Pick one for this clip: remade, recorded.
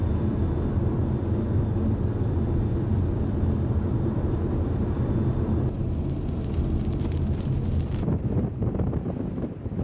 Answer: recorded